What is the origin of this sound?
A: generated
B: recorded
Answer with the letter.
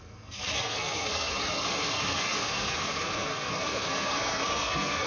A